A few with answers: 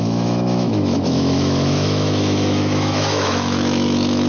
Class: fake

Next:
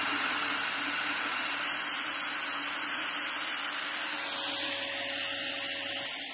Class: real